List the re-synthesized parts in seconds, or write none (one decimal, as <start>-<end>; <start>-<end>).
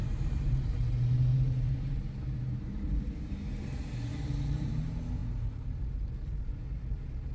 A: 1.3-3.3; 4.1-4.7